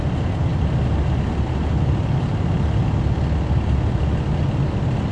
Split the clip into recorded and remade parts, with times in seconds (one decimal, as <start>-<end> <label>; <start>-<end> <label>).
0.0-5.1 recorded